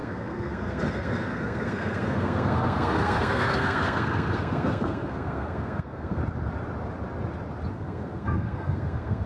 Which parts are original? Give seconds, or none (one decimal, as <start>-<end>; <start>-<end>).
6.2-7.7